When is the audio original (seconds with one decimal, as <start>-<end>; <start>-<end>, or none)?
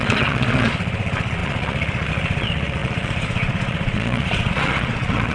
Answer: none